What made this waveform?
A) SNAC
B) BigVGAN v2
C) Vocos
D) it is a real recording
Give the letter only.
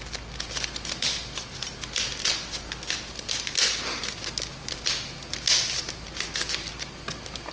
D